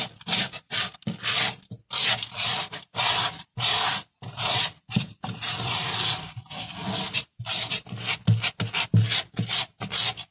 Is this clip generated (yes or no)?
no